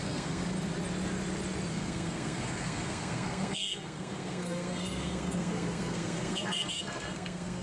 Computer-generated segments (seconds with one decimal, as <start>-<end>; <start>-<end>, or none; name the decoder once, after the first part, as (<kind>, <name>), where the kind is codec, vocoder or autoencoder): 0.0-0.4 (codec, SNAC); 1.7-7.6